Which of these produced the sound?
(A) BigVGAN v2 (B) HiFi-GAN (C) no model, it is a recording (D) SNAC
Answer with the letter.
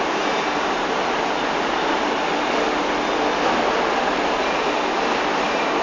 C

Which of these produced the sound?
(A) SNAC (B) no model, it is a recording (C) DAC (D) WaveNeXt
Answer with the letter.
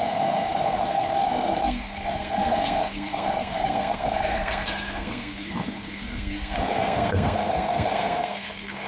A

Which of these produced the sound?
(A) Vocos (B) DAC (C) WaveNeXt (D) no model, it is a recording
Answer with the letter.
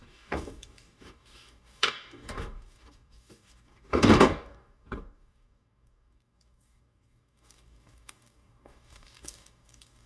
B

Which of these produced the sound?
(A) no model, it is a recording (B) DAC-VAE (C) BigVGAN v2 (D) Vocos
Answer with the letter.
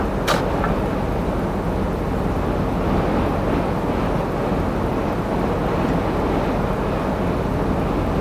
A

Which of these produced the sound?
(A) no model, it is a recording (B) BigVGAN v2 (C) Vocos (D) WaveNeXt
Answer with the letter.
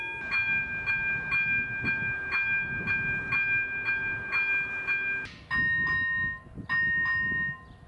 A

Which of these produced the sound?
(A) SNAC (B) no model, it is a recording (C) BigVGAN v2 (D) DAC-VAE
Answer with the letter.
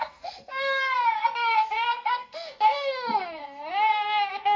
A